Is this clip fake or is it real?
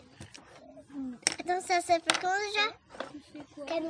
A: real